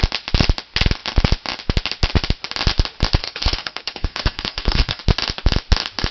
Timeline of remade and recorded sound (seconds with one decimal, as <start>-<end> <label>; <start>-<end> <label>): 0.0-3.2 recorded; 3.2-5.0 remade; 5.0-6.1 recorded